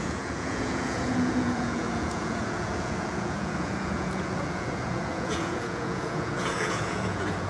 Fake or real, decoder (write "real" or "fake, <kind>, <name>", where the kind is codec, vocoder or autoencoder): fake, vocoder, Vocos